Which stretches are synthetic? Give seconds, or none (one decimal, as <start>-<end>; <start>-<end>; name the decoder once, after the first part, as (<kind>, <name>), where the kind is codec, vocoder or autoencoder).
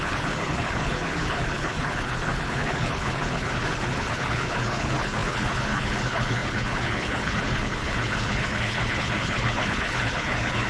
0.0-10.7 (codec, HILCodec)